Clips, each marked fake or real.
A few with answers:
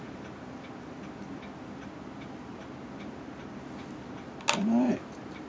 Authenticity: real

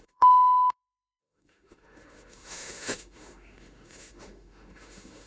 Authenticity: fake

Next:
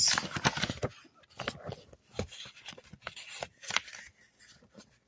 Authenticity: real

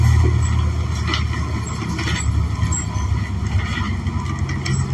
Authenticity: real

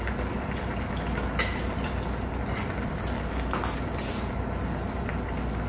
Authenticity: real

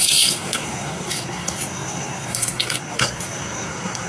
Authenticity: fake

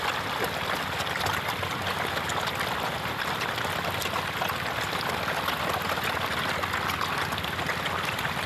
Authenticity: real